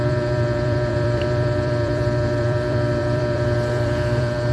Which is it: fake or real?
fake